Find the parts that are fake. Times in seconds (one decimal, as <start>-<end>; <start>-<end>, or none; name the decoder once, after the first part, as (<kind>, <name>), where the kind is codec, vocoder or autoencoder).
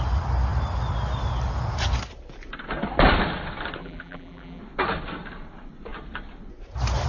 3.8-4.6 (vocoder, BigVGAN v2)